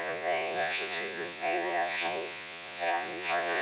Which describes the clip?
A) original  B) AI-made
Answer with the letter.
B